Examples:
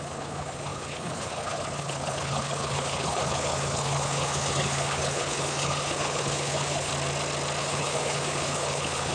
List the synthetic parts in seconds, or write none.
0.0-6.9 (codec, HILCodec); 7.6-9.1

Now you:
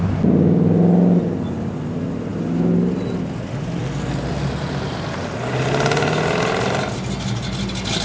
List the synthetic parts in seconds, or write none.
none

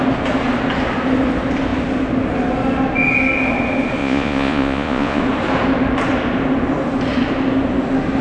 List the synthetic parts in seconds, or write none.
4.0-5.2 (vocoder, Vocos)

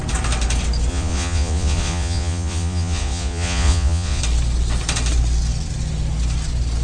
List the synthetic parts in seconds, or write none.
0.9-4.2 (vocoder, Vocos)

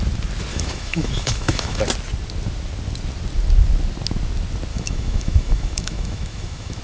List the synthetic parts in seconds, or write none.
0.5-1.8 (autoencoder, DAC-VAE); 4.7-6.8

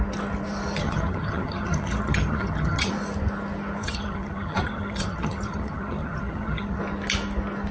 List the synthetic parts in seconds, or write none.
0.8-2.9 (vocoder, HiFi-GAN); 3.8-6.8

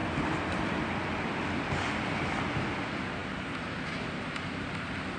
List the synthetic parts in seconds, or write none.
none

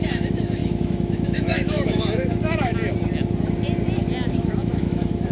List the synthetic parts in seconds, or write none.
0.0-2.7 (autoencoder, DAC-VAE); 4.3-5.3